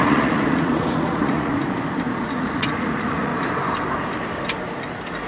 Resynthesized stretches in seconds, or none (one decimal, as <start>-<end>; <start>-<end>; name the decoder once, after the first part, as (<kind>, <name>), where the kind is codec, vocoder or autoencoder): 0.0-1.5 (vocoder, Vocos); 2.2-3.3